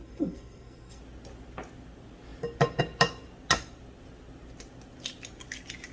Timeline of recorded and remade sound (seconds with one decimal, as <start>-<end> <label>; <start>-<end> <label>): 0.0-1.0 remade; 1.0-5.9 recorded